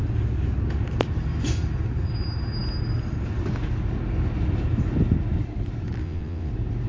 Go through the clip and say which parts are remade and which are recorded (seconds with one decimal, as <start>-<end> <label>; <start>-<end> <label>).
0.0-6.0 recorded; 6.0-6.5 remade; 6.5-6.9 recorded